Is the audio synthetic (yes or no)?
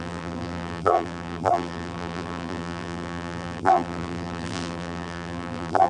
yes